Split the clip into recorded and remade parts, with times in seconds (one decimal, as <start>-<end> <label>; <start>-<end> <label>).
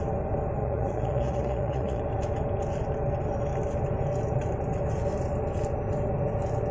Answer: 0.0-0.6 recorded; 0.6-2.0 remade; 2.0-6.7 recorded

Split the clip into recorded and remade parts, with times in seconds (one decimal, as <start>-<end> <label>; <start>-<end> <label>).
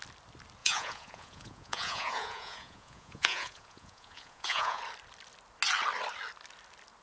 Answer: 0.0-0.6 recorded; 0.6-4.8 remade; 4.8-7.0 recorded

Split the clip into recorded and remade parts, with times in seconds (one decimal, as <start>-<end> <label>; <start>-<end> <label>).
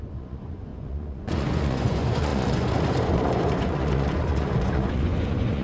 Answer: 0.0-5.6 remade